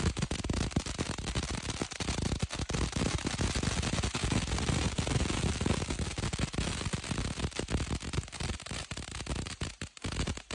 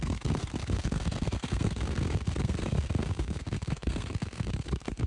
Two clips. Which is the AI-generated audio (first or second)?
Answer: second